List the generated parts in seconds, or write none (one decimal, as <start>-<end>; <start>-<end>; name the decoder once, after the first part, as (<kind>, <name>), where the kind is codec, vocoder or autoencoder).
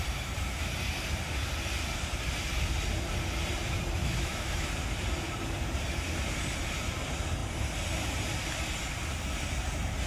4.0-4.7 (autoencoder, DAC-VAE)